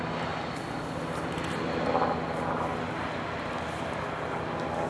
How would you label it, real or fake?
real